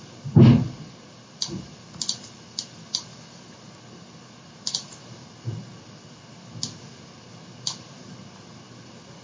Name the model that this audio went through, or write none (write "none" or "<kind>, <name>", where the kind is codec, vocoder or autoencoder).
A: none